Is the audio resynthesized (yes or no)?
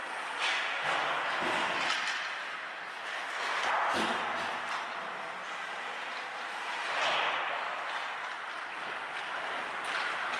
no